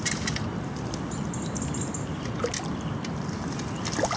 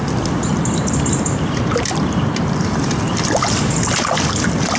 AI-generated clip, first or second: second